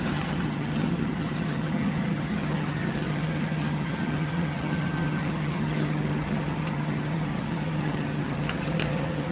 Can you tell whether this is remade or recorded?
remade